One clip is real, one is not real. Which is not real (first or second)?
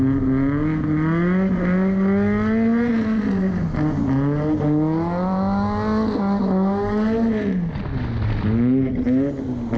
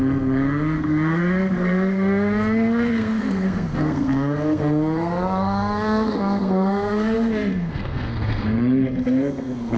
second